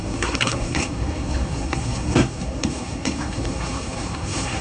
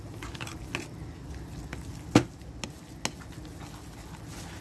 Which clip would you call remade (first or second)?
first